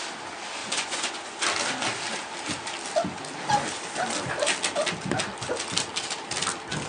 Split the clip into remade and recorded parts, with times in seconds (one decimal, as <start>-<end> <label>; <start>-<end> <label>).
0.0-0.6 recorded; 0.6-1.4 remade; 1.4-6.9 recorded